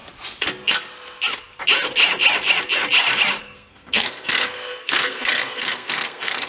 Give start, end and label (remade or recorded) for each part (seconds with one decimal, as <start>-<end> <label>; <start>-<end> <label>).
0.0-3.4 recorded; 3.4-6.5 remade